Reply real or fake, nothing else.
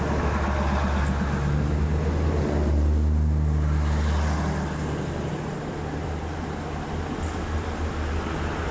real